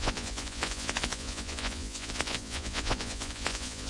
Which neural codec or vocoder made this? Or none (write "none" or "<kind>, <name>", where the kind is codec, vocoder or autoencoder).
vocoder, Vocos